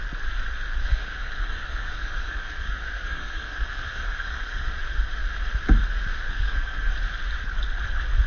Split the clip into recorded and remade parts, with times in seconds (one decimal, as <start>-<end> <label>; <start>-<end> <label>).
0.0-0.8 recorded; 0.8-4.7 remade; 4.7-6.3 recorded; 6.3-6.9 remade; 6.9-8.3 recorded

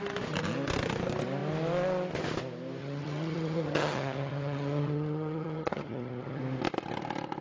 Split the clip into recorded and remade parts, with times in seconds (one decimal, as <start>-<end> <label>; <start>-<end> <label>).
0.0-2.8 recorded; 2.8-6.4 remade; 6.4-7.4 recorded

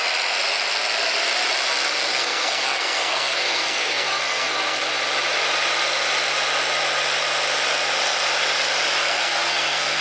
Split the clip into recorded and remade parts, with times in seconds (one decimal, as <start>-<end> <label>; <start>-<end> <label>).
0.0-2.1 recorded; 2.1-4.8 remade; 4.8-9.0 recorded; 9.0-10.0 remade

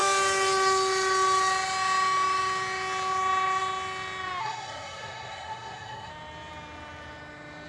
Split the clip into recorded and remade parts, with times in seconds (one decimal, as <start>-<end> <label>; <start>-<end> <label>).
0.0-4.4 recorded; 4.4-6.1 remade; 6.1-7.7 recorded

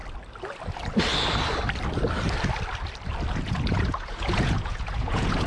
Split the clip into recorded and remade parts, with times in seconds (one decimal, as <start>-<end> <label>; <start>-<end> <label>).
0.0-3.3 recorded; 3.3-5.5 remade

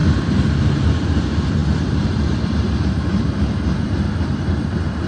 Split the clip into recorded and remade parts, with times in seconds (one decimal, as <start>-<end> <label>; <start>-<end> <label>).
0.0-0.6 recorded; 0.6-5.1 remade